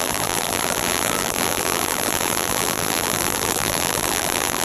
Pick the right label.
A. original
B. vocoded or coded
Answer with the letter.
B